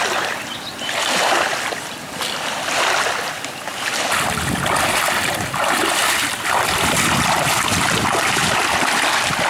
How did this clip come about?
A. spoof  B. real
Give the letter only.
A